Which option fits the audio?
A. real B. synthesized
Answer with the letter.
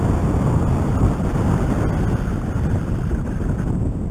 A